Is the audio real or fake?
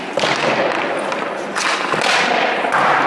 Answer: real